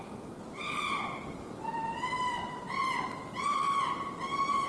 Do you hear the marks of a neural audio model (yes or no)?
no